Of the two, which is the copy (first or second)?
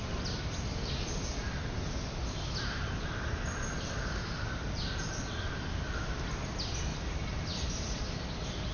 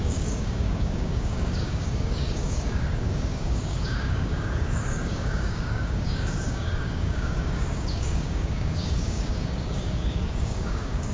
second